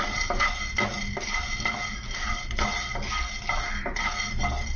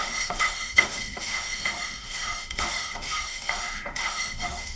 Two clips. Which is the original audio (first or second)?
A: first